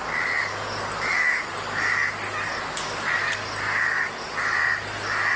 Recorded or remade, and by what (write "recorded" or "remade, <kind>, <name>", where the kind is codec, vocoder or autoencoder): recorded